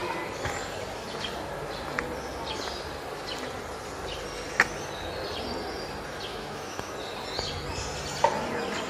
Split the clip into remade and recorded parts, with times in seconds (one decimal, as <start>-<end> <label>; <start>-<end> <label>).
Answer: 0.0-6.3 recorded; 6.3-6.9 remade; 6.9-8.9 recorded